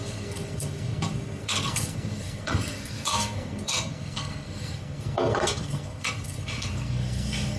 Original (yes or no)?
no